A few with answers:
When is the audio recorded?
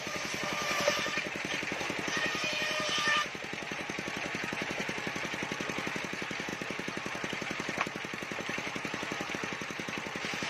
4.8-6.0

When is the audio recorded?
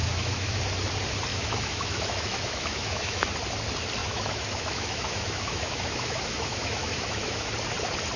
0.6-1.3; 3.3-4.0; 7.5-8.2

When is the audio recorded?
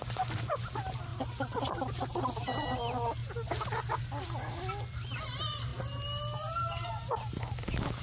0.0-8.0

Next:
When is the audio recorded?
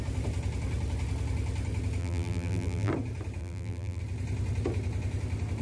0.0-2.0; 2.9-3.4; 4.0-5.6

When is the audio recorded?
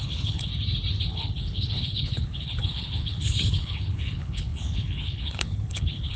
0.5-1.0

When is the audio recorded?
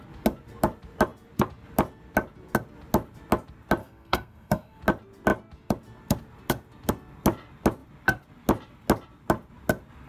0.0-3.8; 4.8-10.1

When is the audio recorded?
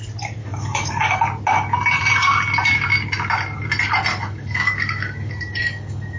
0.0-0.4; 1.2-4.1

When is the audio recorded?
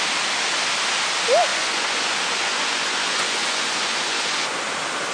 0.0-1.5; 4.6-5.1